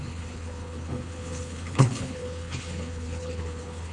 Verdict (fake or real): fake